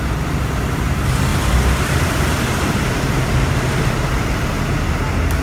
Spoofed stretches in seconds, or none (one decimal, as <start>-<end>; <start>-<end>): 1.3-4.5